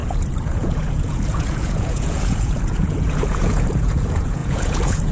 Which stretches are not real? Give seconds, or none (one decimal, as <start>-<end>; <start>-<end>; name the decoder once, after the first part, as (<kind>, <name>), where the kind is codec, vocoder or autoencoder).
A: 0.0-5.1 (vocoder, Vocos)